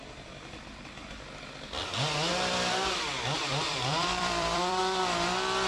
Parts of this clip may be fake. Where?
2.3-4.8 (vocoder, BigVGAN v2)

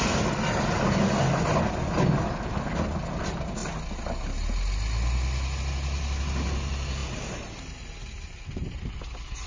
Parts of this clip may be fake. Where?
none

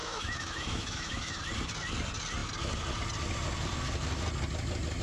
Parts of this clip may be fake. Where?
0.0-1.4 (autoencoder, DAC-VAE)

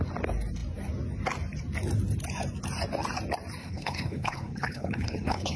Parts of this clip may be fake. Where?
3.6-5.6 (codec, HILCodec)

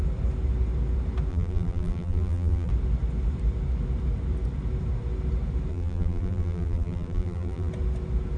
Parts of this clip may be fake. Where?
1.3-2.7 (vocoder, BigVGAN v2); 5.7-7.7

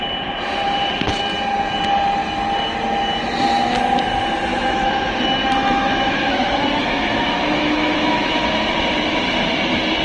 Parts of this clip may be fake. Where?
4.5-8.3 (autoencoder, DAC-VAE)

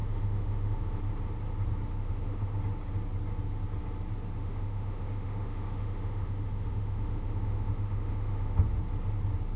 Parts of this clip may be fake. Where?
0.0-1.0 (autoencoder, DAC-VAE); 2.0-2.6; 4.4-8.6

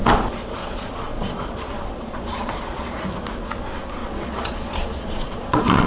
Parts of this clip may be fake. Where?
0.6-3.0 (vocoder, Vocos); 4.0-5.9